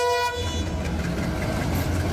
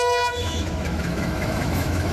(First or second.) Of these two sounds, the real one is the first